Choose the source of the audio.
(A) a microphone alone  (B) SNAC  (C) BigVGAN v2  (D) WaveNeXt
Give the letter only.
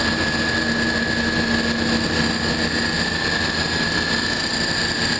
A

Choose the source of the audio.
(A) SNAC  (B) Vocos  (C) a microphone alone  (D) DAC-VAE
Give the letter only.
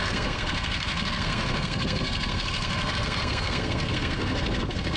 A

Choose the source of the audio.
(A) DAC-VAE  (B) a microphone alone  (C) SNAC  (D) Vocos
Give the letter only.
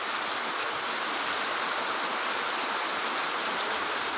B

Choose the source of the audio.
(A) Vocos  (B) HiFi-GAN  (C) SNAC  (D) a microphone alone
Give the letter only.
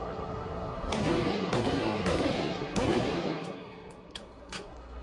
C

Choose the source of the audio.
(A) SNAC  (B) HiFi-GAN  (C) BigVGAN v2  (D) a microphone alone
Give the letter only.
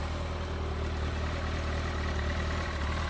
D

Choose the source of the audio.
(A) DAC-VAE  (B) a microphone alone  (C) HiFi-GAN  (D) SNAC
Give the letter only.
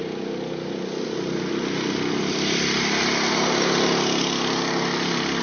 B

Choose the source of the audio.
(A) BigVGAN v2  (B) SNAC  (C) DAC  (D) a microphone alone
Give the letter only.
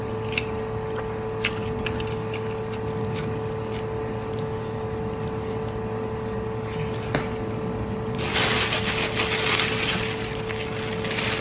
D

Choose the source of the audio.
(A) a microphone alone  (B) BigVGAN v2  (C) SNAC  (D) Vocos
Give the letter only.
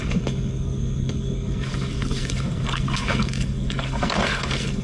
C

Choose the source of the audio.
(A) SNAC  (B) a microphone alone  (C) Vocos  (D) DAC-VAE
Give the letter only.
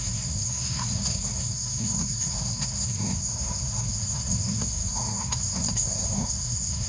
A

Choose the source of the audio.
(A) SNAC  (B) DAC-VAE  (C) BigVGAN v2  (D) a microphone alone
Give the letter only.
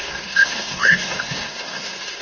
A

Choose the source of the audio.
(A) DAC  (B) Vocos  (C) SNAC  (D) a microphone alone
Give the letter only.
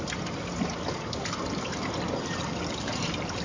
D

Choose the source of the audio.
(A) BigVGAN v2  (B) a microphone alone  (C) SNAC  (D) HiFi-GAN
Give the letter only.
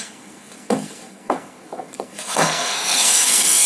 C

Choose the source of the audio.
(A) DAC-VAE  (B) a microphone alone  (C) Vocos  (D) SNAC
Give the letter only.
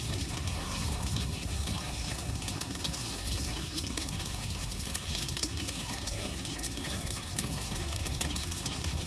D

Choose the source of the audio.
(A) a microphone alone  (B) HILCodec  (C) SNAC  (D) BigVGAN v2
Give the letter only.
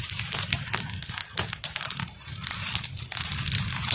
A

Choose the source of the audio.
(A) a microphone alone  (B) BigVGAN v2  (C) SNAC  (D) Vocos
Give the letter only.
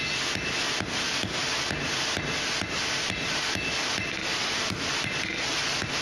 A